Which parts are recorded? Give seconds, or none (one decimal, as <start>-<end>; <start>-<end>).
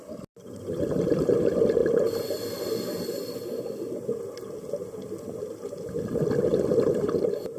0.0-7.6